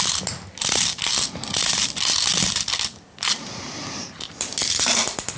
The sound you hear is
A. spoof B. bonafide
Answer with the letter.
B